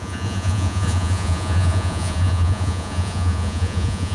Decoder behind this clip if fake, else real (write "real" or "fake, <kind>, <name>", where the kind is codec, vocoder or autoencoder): fake, vocoder, Vocos